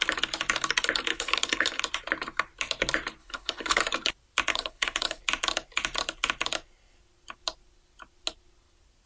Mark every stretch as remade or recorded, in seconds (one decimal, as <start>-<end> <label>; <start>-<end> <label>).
0.0-1.1 recorded; 1.1-1.8 remade; 1.8-3.2 recorded; 3.2-3.8 remade; 3.8-4.5 recorded; 4.5-5.2 remade; 5.2-9.1 recorded